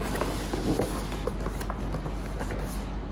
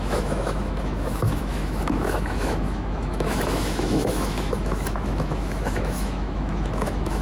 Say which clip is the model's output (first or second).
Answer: second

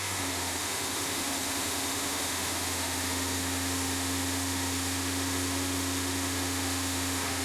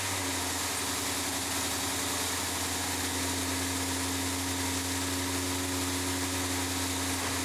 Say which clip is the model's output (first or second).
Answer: first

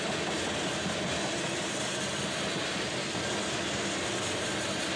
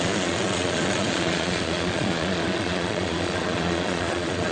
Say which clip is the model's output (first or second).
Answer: second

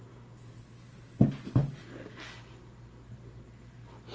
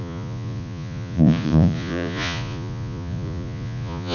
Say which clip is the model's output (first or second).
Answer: second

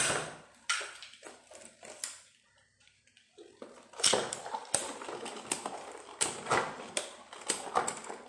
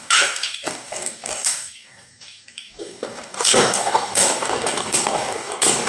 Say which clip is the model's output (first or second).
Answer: second